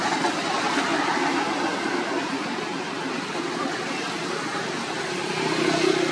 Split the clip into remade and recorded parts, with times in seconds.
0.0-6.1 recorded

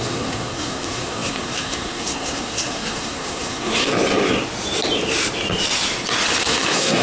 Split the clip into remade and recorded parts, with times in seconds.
0.0-3.9 remade; 3.9-6.4 recorded; 6.4-7.0 remade

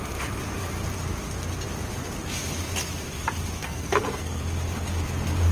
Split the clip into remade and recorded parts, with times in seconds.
0.0-3.6 recorded; 3.6-4.4 remade; 4.4-5.5 recorded

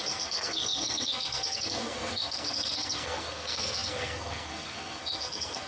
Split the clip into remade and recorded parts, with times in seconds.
0.0-5.7 remade

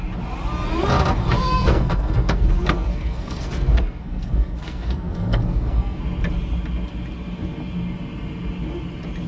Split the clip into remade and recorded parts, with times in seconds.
0.0-1.2 recorded; 1.2-6.0 remade; 6.0-9.3 recorded